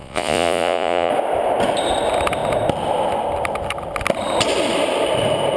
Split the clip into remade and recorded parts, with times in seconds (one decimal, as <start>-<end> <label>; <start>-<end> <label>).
0.0-1.1 remade; 1.1-5.6 recorded